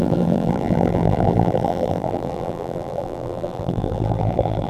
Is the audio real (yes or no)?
no